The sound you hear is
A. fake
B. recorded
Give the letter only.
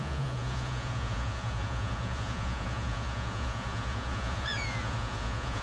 A